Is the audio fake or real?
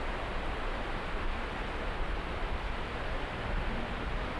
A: real